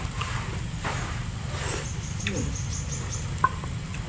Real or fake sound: real